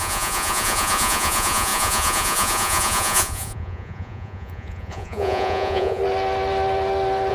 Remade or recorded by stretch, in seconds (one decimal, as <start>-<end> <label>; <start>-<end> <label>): 0.0-6.0 remade; 6.0-7.3 recorded